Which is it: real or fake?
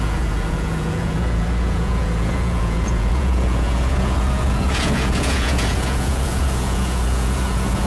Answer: fake